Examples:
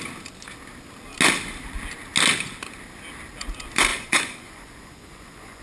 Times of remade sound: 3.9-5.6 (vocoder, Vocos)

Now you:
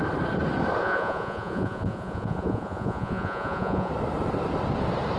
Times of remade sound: 0.8-3.9 (vocoder, Vocos)